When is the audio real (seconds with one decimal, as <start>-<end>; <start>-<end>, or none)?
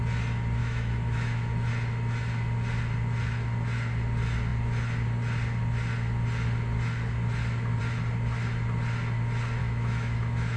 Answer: 0.0-0.6; 1.7-9.6